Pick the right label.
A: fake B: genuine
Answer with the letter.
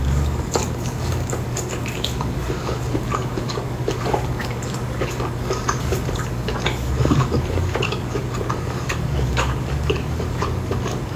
A